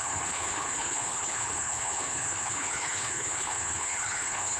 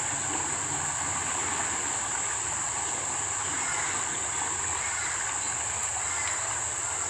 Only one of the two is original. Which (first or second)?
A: second